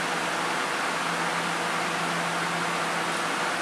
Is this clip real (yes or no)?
yes